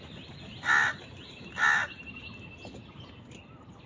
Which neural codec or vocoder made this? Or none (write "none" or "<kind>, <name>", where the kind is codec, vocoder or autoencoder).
none